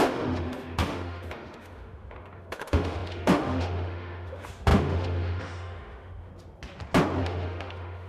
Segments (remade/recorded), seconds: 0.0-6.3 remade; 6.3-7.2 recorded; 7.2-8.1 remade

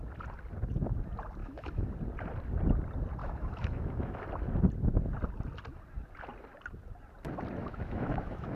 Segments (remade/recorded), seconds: 0.0-1.4 recorded; 1.4-1.9 remade; 1.9-3.2 recorded; 3.2-4.2 remade; 4.2-7.6 recorded; 7.6-8.6 remade

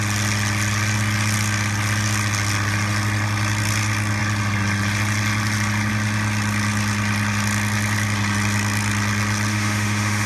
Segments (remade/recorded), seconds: 0.0-9.5 recorded; 9.5-10.3 remade

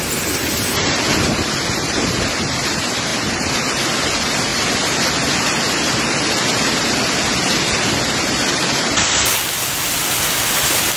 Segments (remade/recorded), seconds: 0.0-11.0 recorded